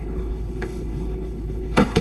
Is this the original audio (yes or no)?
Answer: no